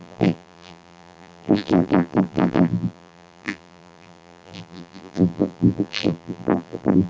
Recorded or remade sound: remade